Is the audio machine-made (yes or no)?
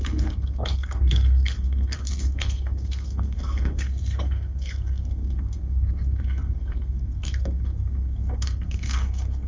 yes